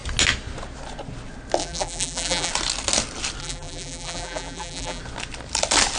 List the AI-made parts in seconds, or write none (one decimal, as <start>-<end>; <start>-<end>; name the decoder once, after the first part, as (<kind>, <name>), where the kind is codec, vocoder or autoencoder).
1.6-2.5 (vocoder, BigVGAN v2); 3.4-5.0